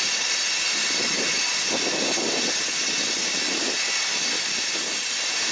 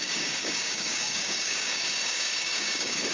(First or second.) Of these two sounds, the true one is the first